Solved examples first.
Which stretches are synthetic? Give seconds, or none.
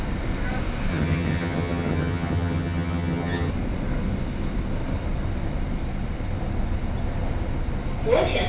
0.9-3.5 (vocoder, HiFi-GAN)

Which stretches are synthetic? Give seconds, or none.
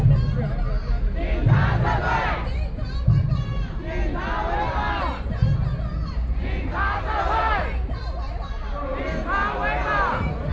none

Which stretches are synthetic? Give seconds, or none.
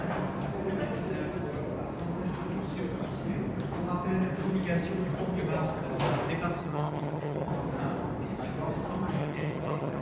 6.6-7.5 (vocoder, HiFi-GAN); 9.2-10.0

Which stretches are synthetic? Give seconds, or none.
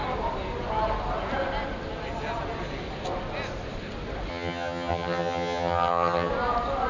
4.3-6.3 (vocoder, HiFi-GAN)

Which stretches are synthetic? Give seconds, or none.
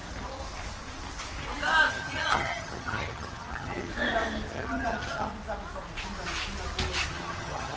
1.9-3.9 (vocoder, HiFi-GAN); 4.5-5.3; 7.1-7.8